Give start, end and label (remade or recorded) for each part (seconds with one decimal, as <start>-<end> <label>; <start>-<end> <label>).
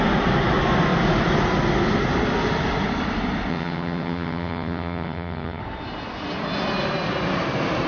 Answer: 0.0-3.5 recorded; 3.5-5.6 remade; 5.6-7.9 recorded